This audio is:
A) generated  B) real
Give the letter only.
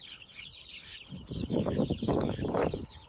A